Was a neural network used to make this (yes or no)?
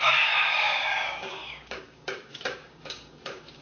yes